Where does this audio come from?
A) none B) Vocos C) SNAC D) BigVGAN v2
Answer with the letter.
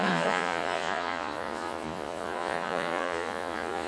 B